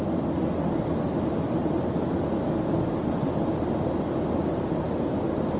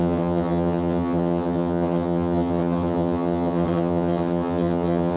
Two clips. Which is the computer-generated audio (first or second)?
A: second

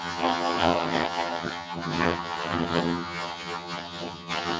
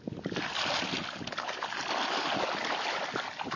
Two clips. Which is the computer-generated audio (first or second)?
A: first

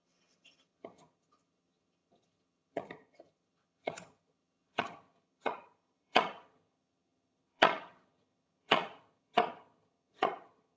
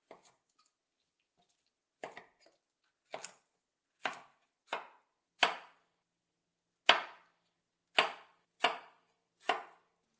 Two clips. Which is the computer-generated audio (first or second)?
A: first